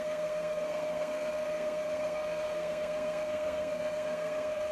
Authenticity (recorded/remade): remade